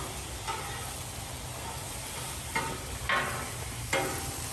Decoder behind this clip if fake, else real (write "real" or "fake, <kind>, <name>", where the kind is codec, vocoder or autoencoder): real